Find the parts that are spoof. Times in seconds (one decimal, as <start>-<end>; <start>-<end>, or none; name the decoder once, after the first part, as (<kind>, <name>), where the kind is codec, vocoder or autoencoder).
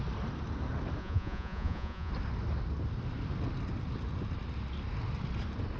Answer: 1.0-2.1 (vocoder, Vocos)